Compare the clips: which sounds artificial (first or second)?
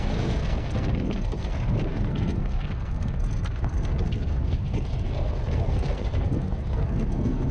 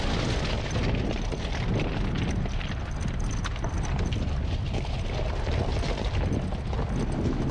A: first